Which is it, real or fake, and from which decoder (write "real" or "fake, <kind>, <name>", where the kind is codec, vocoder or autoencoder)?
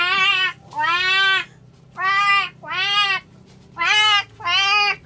real